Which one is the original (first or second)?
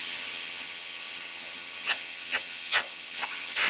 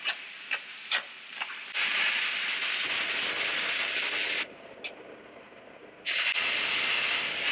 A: second